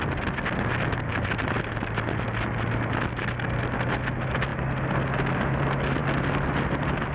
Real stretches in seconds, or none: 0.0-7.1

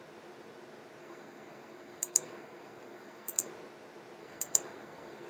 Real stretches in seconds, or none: 0.0-1.0; 3.5-4.2